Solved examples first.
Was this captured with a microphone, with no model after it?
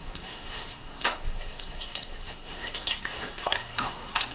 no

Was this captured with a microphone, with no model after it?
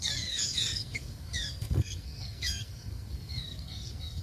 no